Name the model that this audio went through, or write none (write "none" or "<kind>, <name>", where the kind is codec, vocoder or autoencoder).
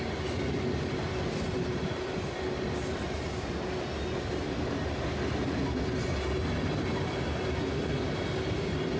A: none